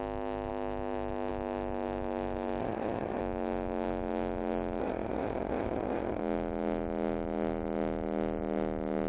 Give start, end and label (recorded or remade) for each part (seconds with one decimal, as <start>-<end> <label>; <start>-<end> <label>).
0.0-2.6 recorded; 2.6-3.2 remade; 3.2-4.8 recorded; 4.8-6.2 remade; 6.2-9.1 recorded